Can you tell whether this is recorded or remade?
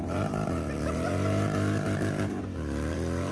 remade